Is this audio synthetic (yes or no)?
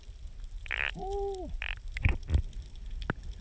no